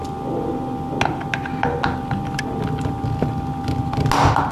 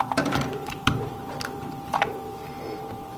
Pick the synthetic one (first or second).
second